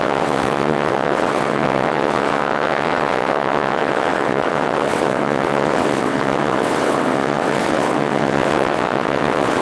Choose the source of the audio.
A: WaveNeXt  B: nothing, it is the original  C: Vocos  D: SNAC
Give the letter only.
A